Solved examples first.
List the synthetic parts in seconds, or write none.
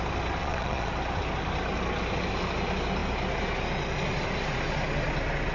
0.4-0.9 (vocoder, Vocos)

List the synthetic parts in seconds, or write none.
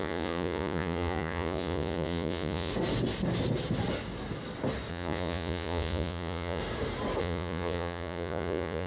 0.0-2.7 (vocoder, Vocos); 4.9-6.6; 7.2-8.9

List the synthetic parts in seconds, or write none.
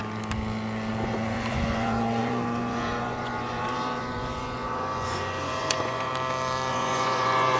0.9-6.1 (vocoder, Vocos); 6.7-7.6